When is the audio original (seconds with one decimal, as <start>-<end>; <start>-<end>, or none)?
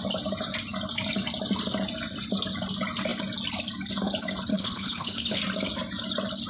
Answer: 0.0-4.5; 5.4-6.5